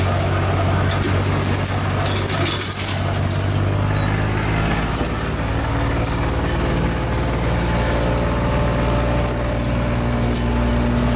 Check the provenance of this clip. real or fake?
real